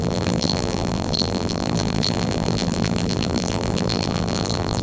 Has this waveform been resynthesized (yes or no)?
yes